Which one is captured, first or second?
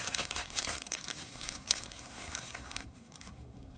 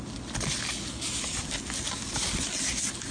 second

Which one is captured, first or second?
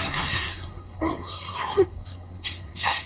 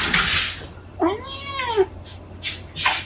second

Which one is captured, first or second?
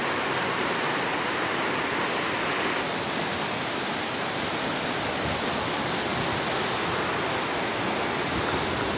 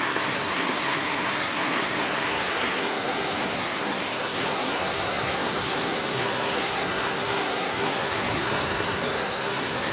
first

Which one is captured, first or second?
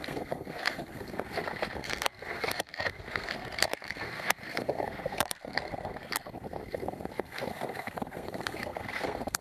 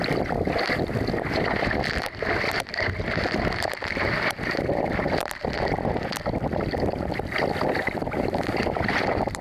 second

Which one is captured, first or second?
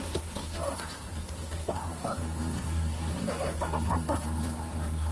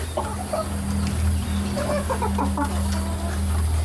second